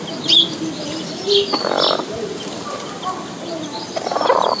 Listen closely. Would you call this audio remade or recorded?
recorded